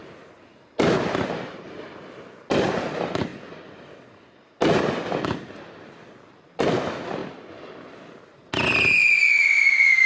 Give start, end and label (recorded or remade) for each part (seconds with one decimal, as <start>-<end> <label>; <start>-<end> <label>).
0.0-3.3 remade; 3.3-6.3 recorded; 6.3-7.2 remade; 7.2-9.4 recorded; 9.4-10.1 remade